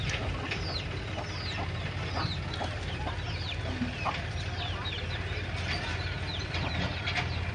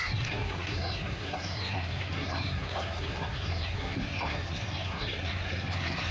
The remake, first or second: second